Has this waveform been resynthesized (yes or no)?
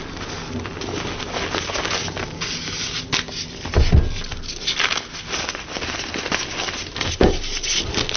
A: no